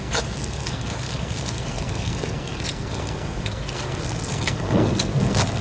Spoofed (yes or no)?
yes